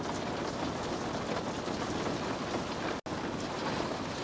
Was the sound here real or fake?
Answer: real